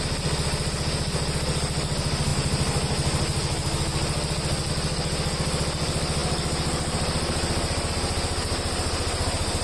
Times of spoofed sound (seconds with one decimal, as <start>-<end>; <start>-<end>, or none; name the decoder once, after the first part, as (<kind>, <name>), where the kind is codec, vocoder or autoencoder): none